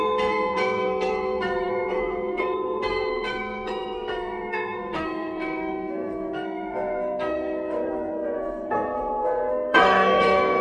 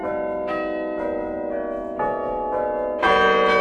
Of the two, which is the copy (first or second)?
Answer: first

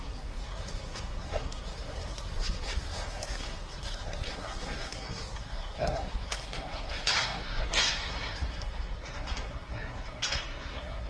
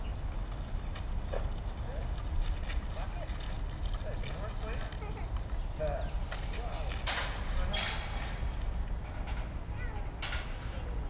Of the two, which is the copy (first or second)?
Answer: first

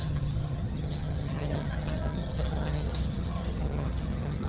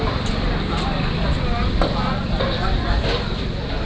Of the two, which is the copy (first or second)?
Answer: first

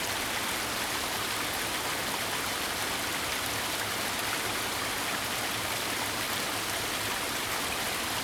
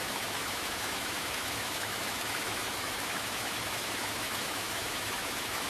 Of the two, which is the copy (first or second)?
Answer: second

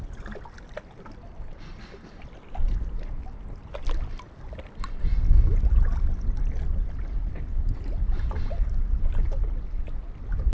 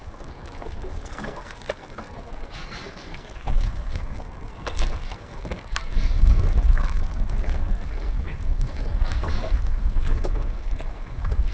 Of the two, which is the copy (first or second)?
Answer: second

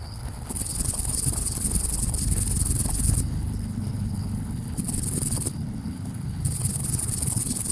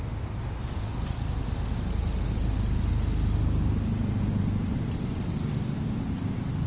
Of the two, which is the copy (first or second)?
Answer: first